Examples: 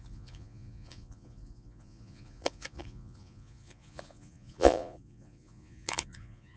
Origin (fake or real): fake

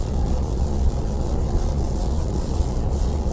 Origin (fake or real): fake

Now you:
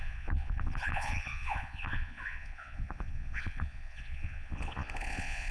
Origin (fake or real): fake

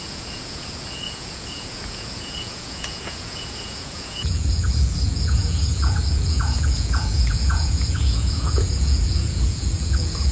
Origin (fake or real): fake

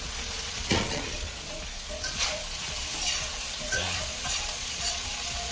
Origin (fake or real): fake